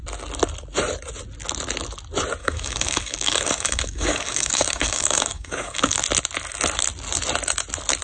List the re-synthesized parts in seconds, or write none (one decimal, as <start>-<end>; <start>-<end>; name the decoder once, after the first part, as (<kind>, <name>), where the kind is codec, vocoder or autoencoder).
2.4-6.0 (codec, DAC)